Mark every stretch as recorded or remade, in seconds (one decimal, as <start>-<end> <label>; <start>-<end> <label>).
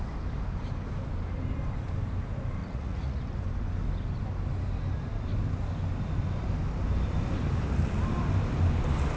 0.0-2.6 recorded; 2.6-3.2 remade; 3.2-9.2 recorded